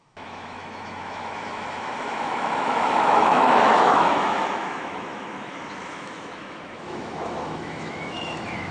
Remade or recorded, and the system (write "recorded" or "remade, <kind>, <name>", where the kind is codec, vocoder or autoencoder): remade, autoencoder, DAC-VAE